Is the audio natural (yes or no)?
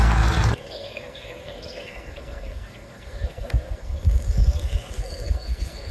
no